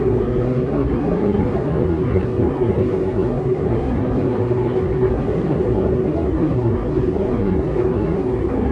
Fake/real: fake